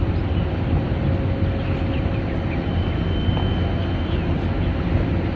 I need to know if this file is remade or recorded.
recorded